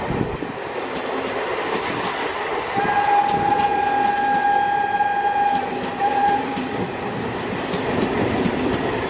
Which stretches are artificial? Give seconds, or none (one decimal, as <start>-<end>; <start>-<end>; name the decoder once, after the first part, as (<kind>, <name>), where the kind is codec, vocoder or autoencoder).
0.0-1.5 (vocoder, BigVGAN v2); 5.8-9.1